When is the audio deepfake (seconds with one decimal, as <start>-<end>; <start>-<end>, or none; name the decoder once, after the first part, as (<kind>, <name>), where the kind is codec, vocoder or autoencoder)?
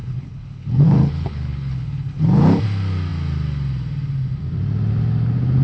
0.0-2.2 (codec, HILCodec)